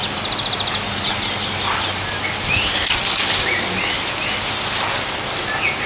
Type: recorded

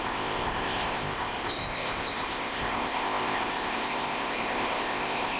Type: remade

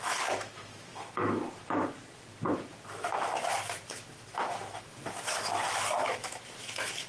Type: remade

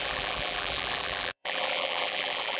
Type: remade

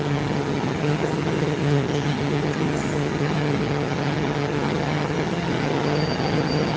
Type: remade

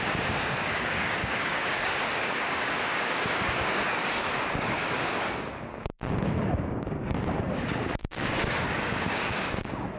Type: remade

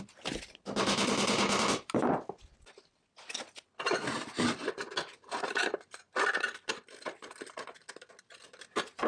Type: recorded